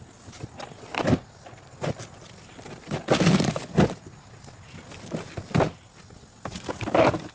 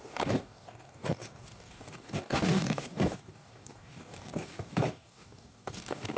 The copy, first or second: second